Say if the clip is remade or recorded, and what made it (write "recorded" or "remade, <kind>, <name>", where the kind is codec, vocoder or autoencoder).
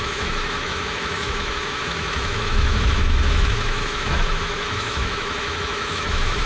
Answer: remade, autoencoder, DAC-VAE